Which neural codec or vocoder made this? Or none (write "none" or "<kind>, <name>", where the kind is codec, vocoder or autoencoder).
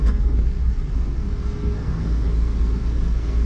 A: codec, SNAC